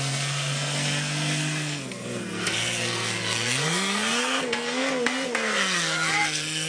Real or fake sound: fake